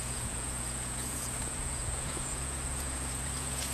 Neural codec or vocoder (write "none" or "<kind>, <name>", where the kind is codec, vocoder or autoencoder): vocoder, Vocos